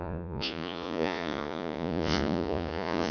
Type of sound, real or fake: fake